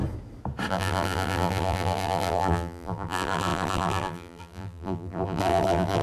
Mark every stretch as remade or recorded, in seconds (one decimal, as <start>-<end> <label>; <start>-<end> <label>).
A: 0.0-0.7 recorded; 0.7-6.0 remade